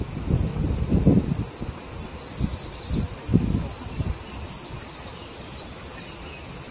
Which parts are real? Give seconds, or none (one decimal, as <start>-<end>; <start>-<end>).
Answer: 0.0-6.7